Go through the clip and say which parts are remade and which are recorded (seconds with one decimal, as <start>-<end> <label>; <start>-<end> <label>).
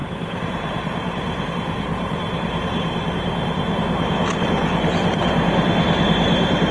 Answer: 0.0-1.5 remade; 1.5-1.9 recorded; 1.9-3.1 remade; 3.1-6.7 recorded